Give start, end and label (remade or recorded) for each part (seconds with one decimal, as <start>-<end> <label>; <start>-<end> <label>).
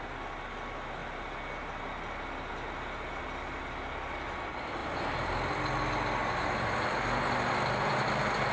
0.0-8.5 recorded